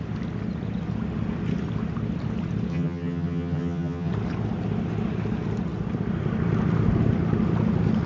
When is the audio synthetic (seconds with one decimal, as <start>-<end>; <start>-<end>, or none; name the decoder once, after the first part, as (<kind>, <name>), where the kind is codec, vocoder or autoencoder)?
2.7-4.1 (vocoder, HiFi-GAN)